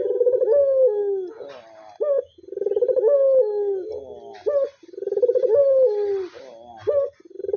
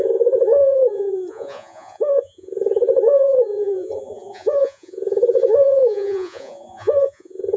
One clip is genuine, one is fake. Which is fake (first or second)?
second